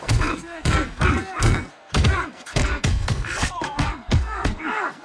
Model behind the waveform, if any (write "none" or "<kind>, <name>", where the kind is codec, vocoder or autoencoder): codec, SNAC